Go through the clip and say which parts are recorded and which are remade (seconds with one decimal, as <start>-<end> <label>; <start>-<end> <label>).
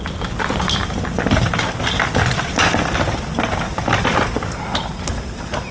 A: 0.0-0.8 recorded; 0.8-4.2 remade; 4.2-5.7 recorded